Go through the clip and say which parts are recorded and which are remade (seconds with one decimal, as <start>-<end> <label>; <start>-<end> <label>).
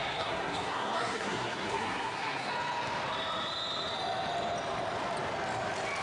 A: 0.0-2.5 remade; 2.5-6.0 recorded